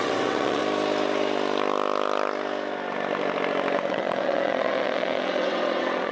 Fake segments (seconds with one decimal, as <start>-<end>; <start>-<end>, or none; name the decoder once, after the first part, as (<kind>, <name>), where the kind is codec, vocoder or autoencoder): 0.0-0.6 (vocoder, WaveNeXt); 3.9-6.1